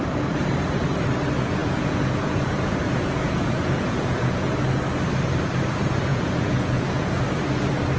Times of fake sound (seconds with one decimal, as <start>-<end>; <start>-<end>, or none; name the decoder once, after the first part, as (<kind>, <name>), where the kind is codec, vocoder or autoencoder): 1.6-4.5 (vocoder, Vocos); 6.1-7.2